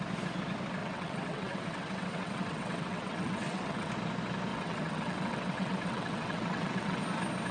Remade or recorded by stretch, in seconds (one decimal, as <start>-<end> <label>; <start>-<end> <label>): 0.0-0.8 recorded; 0.8-3.9 remade; 3.9-4.5 recorded; 4.5-7.0 remade; 7.0-7.5 recorded